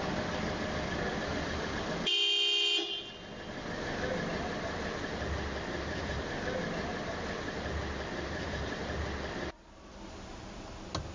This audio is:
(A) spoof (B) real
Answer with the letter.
B